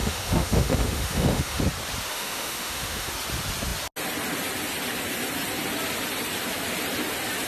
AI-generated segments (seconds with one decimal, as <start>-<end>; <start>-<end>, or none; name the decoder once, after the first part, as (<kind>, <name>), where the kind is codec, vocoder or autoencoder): 0.0-1.6 (autoencoder, DAC-VAE); 2.1-3.1

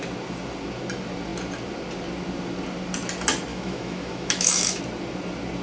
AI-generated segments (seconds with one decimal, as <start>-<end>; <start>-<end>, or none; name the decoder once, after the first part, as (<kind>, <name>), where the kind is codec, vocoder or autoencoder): 3.5-4.8 (autoencoder, DAC-VAE)

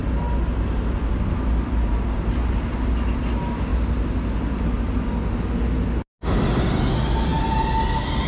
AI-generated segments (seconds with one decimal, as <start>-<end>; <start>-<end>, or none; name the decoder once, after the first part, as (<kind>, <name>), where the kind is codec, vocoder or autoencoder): none

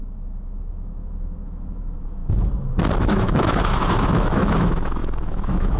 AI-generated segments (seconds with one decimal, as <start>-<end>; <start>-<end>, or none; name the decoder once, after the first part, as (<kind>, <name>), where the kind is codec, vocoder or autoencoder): 0.0-2.2 (autoencoder, DAC-VAE); 3.0-5.8

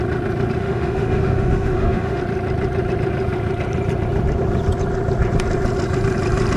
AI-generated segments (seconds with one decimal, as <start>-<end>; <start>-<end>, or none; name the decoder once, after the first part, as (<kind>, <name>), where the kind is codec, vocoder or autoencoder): 0.6-2.2 (autoencoder, DAC-VAE)

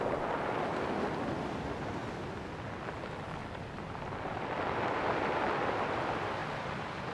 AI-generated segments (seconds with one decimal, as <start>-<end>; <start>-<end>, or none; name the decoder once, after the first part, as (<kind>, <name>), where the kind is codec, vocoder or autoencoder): none

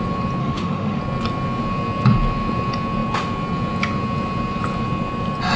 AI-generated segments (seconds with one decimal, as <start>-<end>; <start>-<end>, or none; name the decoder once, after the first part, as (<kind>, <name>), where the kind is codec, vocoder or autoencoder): 0.4-1.0 (autoencoder, DAC-VAE)